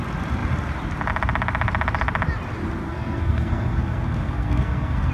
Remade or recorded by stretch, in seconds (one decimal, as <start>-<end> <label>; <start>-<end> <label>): 0.0-2.8 recorded; 2.8-5.1 remade